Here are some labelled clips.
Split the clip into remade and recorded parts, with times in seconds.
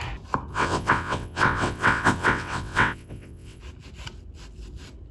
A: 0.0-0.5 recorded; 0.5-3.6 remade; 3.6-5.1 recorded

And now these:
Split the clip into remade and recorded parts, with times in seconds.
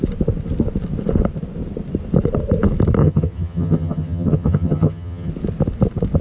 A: 0.0-3.0 recorded; 3.0-5.3 remade; 5.3-6.2 recorded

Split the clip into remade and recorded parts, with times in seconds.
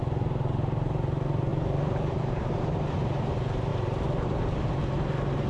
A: 0.0-5.5 remade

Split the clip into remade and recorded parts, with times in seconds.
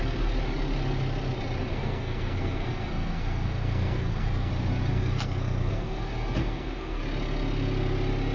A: 0.0-1.7 recorded; 1.7-4.5 remade; 4.5-4.9 recorded; 4.9-6.0 remade; 6.0-6.4 recorded; 6.4-7.0 remade; 7.0-8.3 recorded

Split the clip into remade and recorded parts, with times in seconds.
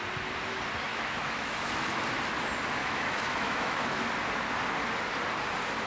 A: 0.0-0.9 recorded; 0.9-2.0 remade; 2.0-2.8 recorded; 2.8-4.0 remade; 4.0-5.9 recorded